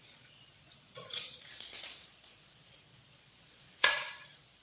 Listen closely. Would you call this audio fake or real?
fake